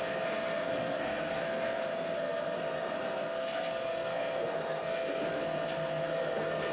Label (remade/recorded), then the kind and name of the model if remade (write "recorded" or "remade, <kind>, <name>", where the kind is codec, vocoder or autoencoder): remade, codec, SNAC